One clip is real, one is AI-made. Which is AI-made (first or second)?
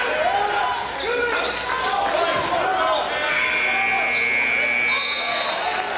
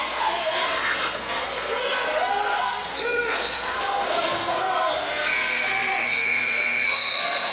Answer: second